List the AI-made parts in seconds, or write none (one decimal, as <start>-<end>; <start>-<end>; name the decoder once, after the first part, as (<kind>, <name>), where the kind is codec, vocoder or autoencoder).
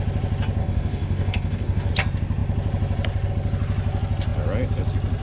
0.6-1.9 (codec, DAC)